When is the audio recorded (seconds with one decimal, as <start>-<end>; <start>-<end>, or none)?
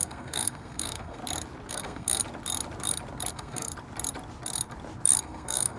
1.2-1.7; 2.2-3.3; 3.7-5.2